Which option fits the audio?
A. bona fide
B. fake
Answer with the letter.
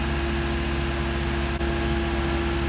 A